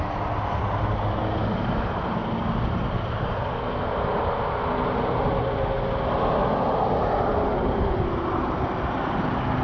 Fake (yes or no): no